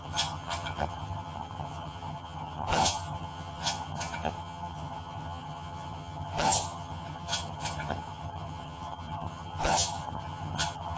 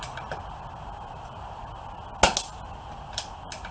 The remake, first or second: first